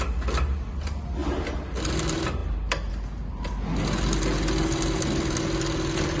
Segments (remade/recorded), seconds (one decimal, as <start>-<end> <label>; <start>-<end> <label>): 0.0-6.2 recorded